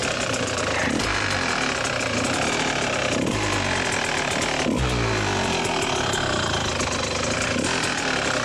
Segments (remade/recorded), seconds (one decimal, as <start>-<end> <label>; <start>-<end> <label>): 0.0-0.6 remade; 0.6-8.4 recorded

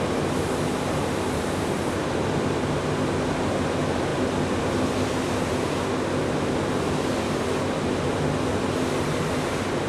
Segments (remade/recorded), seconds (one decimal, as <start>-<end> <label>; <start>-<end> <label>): 0.0-9.9 recorded

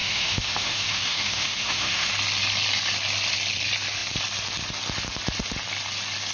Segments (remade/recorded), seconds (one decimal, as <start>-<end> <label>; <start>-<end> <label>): 0.0-2.1 remade; 2.1-6.3 recorded

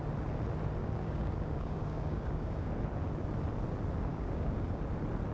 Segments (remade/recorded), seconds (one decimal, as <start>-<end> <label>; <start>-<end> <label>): 0.0-0.8 recorded; 0.8-2.7 remade; 2.7-4.1 recorded; 4.1-4.8 remade; 4.8-5.3 recorded

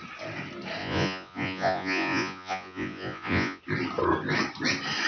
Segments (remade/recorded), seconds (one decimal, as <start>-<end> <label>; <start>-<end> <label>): 0.0-0.8 recorded; 0.8-3.6 remade; 3.6-5.1 recorded

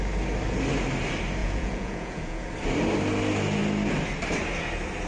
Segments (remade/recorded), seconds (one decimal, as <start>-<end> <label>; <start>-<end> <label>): 0.0-1.4 recorded; 1.4-2.5 remade; 2.5-5.1 recorded